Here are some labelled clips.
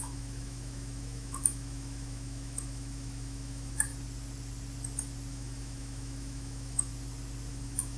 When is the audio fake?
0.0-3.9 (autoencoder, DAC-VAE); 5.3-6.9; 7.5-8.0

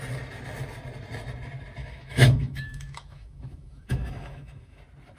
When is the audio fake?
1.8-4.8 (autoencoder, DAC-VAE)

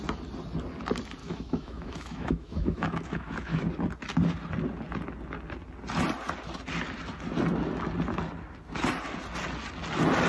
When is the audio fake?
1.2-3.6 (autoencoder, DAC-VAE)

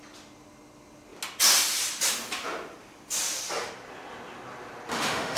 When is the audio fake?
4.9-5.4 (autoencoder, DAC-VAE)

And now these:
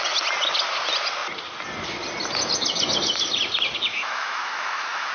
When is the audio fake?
3.9-5.1 (autoencoder, DAC-VAE)

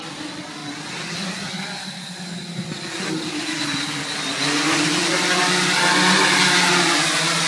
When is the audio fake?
none